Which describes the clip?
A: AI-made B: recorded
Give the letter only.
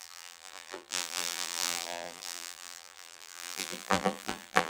A